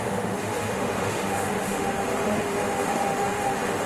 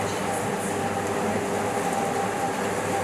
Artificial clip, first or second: first